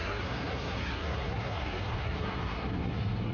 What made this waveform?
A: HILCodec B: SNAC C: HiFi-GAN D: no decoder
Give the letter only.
B